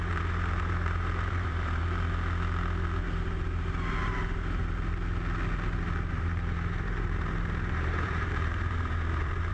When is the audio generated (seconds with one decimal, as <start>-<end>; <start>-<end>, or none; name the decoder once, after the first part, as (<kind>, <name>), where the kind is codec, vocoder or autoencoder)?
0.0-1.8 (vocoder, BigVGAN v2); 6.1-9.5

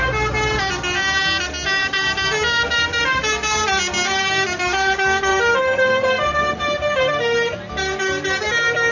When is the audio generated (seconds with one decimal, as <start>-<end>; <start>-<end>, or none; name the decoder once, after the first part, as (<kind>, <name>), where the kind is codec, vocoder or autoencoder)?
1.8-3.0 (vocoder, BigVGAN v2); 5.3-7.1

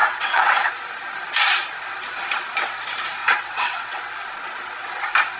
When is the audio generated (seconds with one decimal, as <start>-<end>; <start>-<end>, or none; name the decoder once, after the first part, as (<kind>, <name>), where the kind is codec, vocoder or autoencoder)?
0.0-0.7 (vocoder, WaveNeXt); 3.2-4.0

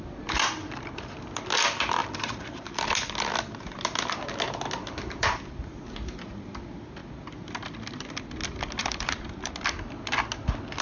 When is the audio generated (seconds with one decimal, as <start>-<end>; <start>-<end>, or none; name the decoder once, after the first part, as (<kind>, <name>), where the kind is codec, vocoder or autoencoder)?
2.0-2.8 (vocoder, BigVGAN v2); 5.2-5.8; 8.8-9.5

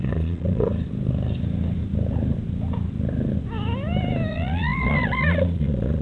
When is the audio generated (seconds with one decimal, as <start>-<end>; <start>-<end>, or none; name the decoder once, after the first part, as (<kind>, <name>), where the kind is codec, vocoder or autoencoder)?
0.0-0.7 (vocoder, Vocos); 4.3-6.0

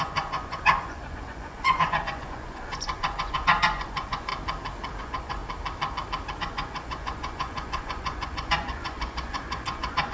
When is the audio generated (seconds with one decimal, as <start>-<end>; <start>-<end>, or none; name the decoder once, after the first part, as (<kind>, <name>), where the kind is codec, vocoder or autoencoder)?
0.0-4.3 (vocoder, Vocos); 5.0-5.4; 6.4-10.1